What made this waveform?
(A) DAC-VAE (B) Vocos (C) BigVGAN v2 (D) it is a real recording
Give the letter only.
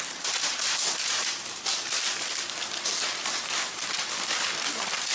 C